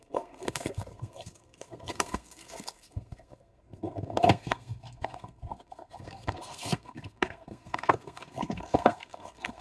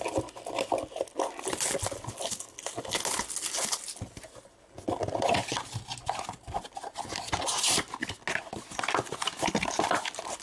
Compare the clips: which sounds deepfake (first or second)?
first